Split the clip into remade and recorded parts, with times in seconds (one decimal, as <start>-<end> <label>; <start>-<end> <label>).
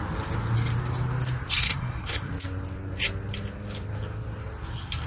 0.0-1.6 recorded; 1.6-2.3 remade; 2.3-5.1 recorded